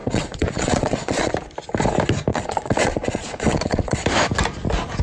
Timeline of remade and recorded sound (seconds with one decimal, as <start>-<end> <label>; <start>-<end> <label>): 0.0-1.3 remade; 1.3-2.3 recorded; 2.3-4.0 remade; 4.0-5.0 recorded